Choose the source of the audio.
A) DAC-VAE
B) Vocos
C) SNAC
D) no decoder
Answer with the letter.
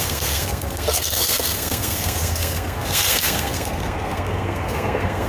C